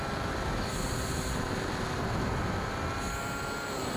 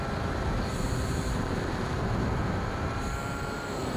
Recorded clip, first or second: first